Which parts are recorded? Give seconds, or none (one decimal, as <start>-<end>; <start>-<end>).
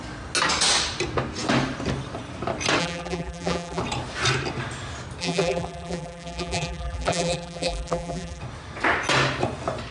0.0-2.8; 3.8-5.2; 8.4-9.9